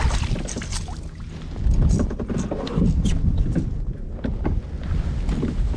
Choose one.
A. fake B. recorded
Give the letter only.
B